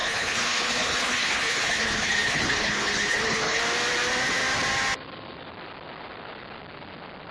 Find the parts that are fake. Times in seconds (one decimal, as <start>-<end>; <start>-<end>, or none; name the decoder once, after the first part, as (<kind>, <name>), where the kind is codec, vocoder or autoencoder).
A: 0.0-3.6 (codec, HILCodec)